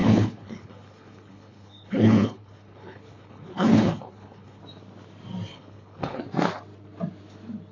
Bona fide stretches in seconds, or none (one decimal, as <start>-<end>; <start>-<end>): 4.6-5.5; 6.2-7.7